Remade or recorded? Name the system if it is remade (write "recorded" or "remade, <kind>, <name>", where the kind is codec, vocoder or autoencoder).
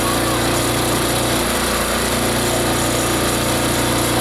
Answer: recorded